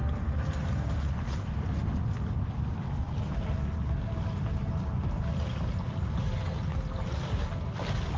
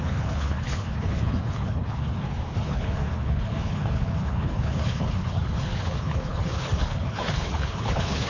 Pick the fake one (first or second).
second